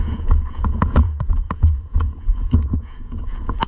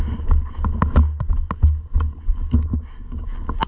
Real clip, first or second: second